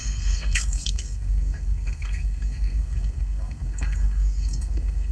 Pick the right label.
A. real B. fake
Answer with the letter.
B